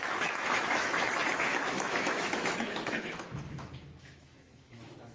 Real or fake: fake